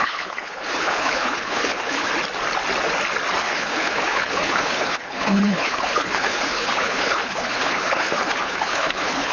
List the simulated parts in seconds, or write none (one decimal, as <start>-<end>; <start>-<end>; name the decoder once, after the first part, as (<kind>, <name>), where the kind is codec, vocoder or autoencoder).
0.0-2.1 (codec, HILCodec); 3.4-9.3